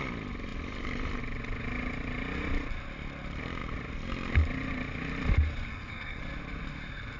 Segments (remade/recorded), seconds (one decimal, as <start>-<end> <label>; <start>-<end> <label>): 0.0-5.7 recorded; 5.7-6.2 remade; 6.2-7.2 recorded